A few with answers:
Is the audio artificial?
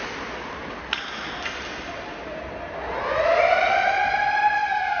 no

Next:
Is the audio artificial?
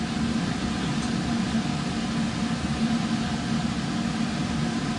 no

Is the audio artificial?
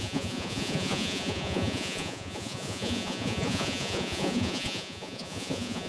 yes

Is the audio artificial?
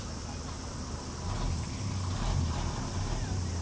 no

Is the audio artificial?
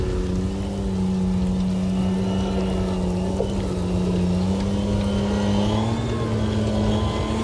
no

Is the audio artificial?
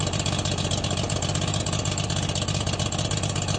no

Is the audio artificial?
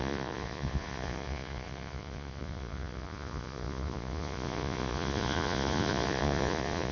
yes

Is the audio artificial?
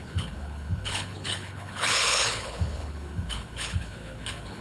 yes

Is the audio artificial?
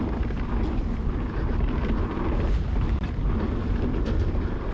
no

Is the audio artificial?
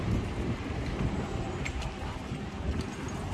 no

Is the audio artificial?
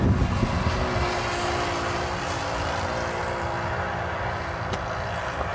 no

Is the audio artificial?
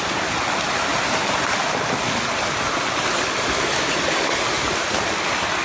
no